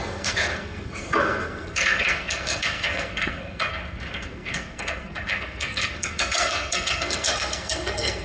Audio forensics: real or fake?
fake